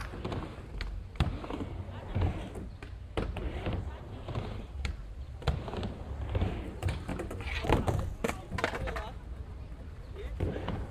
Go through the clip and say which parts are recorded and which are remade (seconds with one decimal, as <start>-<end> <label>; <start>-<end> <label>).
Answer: 0.0-2.1 recorded; 2.1-10.9 remade